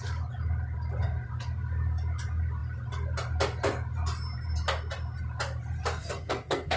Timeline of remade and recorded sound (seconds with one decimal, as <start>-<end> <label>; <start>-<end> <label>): 0.0-6.0 recorded; 6.0-6.8 remade